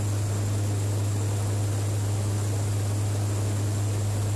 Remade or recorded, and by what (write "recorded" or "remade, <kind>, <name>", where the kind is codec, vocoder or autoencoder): recorded